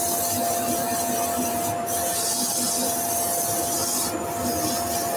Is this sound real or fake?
real